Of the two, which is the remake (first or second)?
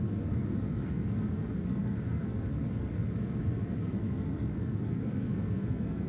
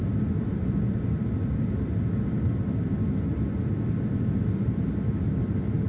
first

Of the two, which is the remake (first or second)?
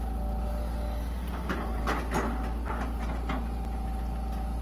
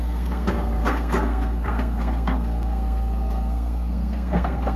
second